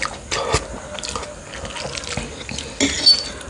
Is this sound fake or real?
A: real